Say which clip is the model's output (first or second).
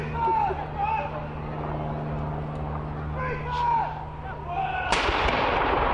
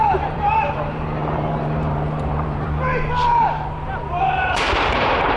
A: second